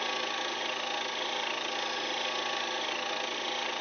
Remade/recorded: recorded